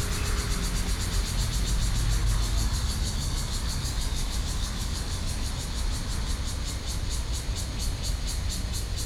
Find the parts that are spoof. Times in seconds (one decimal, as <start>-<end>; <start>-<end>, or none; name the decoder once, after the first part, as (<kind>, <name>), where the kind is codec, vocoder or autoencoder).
2.2-5.5 (codec, DAC)